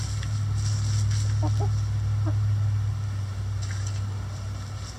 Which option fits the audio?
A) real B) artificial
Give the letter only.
A